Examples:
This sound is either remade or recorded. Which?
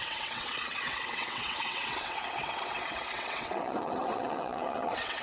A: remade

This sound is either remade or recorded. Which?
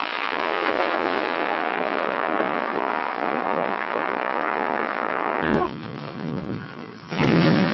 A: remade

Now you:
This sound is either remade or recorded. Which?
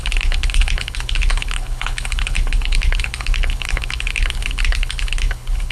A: remade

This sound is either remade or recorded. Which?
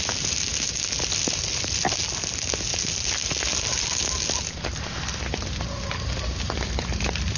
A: recorded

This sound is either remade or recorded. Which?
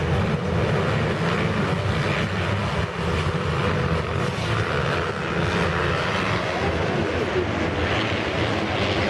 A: recorded